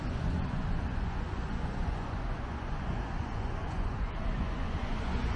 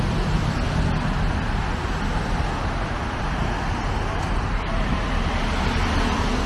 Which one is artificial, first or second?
first